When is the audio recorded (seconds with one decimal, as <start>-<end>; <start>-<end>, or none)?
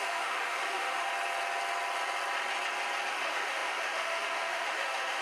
1.1-3.1